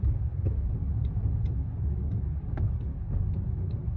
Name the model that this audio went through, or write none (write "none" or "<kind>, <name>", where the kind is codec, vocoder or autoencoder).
none